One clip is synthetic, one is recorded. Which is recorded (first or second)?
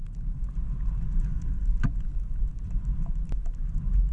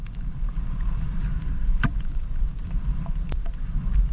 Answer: first